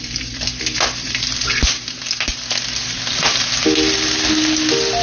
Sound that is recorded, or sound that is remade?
recorded